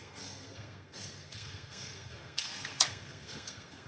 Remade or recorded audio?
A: remade